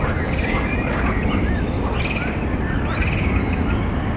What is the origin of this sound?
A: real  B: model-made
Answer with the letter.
A